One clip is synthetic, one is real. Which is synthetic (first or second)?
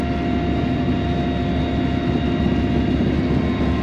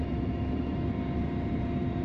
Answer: second